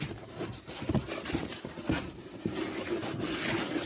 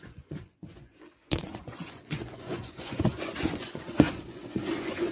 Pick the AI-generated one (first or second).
second